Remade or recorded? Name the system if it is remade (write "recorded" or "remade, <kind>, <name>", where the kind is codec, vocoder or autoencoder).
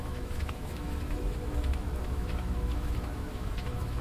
remade, autoencoder, DAC-VAE